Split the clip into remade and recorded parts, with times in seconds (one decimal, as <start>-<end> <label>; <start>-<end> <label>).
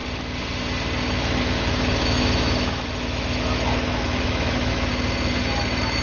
0.0-1.2 recorded; 1.2-4.9 remade; 4.9-5.4 recorded; 5.4-6.0 remade